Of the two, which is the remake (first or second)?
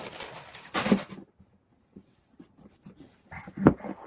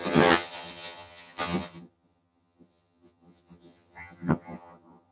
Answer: second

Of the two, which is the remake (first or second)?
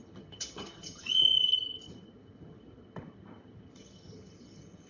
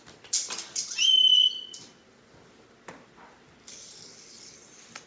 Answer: first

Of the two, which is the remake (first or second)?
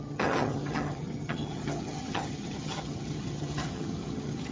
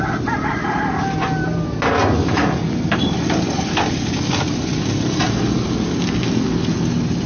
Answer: first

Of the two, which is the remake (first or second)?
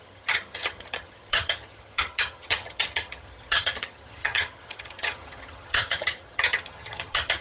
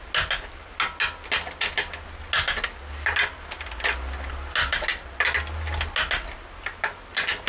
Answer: first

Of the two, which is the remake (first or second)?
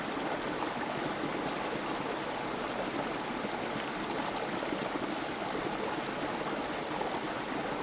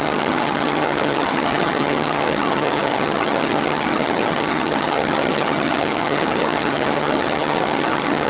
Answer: second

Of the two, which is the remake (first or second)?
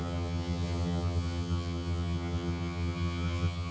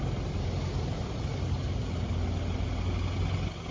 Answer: first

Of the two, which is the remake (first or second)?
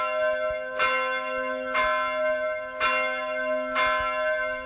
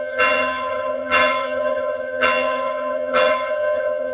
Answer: second